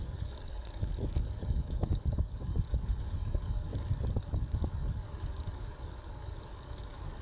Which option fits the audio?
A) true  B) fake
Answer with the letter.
B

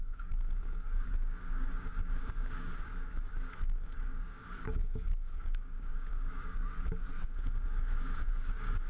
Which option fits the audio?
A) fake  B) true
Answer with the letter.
A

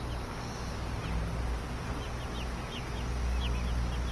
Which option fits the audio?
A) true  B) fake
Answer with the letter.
A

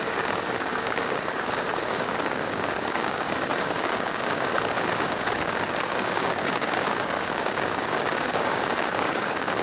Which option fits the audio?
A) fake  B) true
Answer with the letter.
A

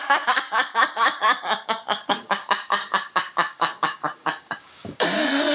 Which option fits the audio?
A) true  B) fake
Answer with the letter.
B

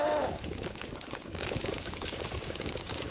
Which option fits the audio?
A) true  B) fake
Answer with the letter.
B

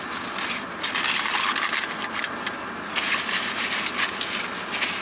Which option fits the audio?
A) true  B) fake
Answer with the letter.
A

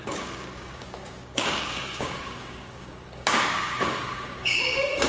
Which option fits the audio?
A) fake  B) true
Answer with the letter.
A